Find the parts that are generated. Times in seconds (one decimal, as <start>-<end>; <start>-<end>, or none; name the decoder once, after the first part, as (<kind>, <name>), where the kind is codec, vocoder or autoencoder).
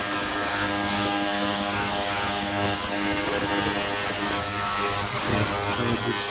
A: 0.0-3.5 (codec, DAC); 4.1-5.3